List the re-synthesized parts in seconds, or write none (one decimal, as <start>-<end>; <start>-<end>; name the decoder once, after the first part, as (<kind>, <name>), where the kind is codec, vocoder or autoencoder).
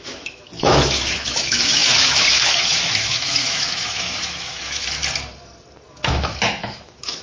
0.0-5.0 (autoencoder, DAC-VAE); 5.9-7.2